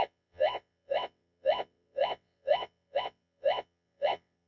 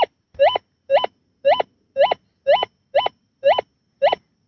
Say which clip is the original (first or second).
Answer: second